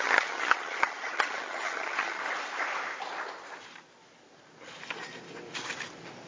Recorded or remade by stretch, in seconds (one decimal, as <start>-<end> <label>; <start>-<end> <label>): 0.0-2.2 remade; 2.2-6.3 recorded